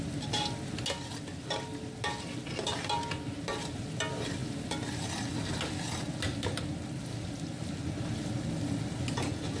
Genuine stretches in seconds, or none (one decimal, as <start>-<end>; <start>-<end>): 0.0-9.6